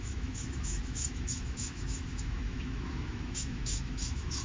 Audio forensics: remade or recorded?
remade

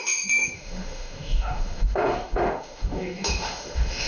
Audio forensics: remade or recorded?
remade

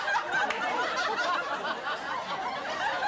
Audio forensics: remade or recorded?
recorded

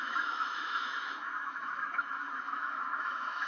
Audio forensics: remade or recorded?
remade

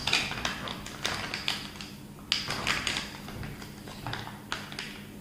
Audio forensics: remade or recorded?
recorded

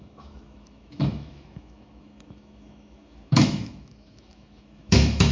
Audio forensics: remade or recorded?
remade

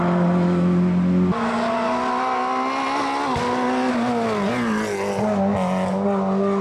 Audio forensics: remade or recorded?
recorded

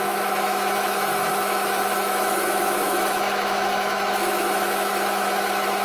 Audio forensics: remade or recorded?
remade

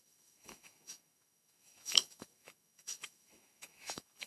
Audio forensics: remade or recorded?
remade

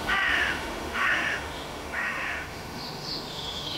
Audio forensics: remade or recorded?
remade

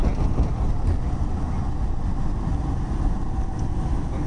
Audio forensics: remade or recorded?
recorded